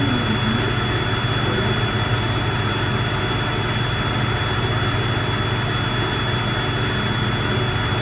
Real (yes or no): yes